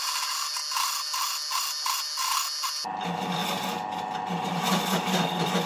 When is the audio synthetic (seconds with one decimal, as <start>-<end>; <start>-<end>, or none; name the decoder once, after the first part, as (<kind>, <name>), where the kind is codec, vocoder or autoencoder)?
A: none